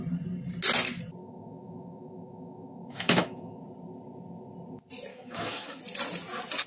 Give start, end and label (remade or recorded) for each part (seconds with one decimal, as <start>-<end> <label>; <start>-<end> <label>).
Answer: 0.0-1.2 recorded; 1.2-3.6 remade; 3.6-5.1 recorded; 5.1-5.8 remade; 5.8-6.7 recorded